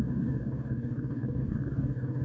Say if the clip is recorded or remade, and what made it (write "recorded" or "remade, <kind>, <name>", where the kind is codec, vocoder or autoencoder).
remade, codec, DAC